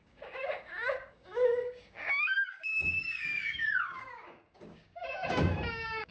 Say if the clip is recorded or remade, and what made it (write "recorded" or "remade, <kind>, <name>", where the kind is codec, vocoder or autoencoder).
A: remade, codec, DAC